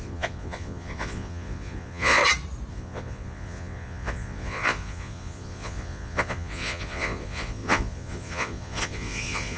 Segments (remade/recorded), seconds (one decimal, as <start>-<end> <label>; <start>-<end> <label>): 0.0-2.2 remade; 2.2-2.7 recorded; 2.7-9.6 remade